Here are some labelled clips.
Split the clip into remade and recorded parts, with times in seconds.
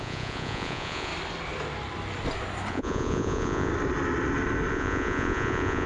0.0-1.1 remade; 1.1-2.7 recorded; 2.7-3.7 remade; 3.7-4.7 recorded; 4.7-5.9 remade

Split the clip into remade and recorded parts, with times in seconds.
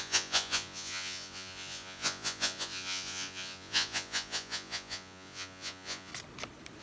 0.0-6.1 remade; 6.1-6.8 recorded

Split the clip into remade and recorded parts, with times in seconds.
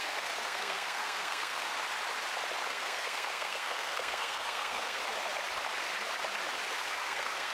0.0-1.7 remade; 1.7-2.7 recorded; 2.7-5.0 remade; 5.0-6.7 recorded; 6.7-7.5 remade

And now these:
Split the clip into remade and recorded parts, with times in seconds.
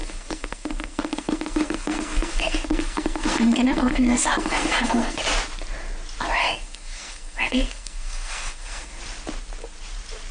0.0-5.2 remade; 5.2-6.4 recorded; 6.4-9.0 remade; 9.0-10.3 recorded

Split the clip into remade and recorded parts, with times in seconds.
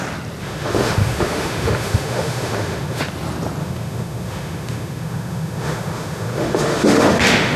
0.0-0.4 recorded; 0.4-3.0 remade; 3.0-3.6 recorded; 3.6-7.6 remade